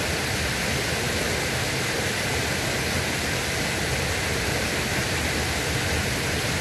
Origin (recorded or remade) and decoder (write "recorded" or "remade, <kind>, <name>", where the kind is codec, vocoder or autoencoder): recorded